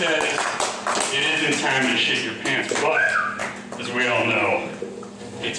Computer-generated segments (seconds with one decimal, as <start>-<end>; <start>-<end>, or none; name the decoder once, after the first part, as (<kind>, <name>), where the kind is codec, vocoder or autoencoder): 1.9-2.6 (vocoder, Vocos)